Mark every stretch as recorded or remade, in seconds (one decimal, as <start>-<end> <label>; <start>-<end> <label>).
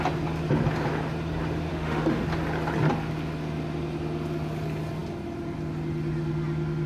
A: 0.0-1.7 recorded; 1.7-2.2 remade; 2.2-6.9 recorded